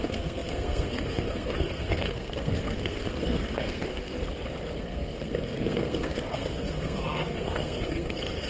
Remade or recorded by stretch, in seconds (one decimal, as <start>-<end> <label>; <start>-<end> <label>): 0.0-4.2 remade; 4.2-4.8 recorded; 4.8-8.5 remade